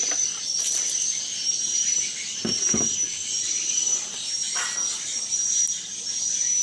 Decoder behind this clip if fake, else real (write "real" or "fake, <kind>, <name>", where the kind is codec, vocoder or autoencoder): fake, vocoder, BigVGAN v2